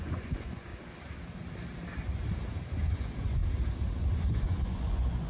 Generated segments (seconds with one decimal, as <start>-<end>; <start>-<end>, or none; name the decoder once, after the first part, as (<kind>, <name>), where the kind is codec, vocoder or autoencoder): 0.0-0.7 (vocoder, Vocos); 2.8-3.4; 4.0-5.3